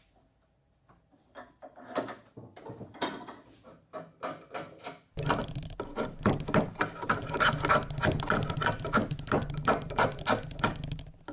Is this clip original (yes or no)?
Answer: yes